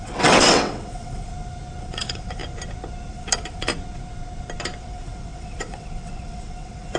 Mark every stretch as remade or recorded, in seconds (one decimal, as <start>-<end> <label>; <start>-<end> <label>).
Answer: 0.0-1.3 remade; 1.3-1.8 recorded; 1.8-2.4 remade; 2.4-3.1 recorded; 3.1-3.7 remade; 3.7-4.8 recorded; 4.8-7.0 remade